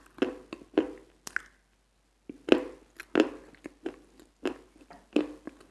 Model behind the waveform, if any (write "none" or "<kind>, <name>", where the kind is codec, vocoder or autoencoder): none